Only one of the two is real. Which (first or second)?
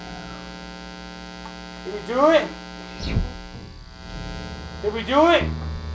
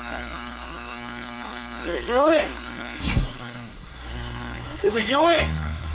first